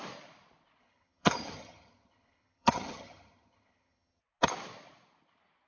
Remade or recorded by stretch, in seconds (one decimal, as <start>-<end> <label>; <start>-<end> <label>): 0.0-0.8 recorded; 0.8-4.2 remade; 4.2-5.7 recorded